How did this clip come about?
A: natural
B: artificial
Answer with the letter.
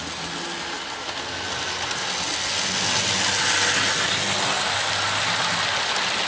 A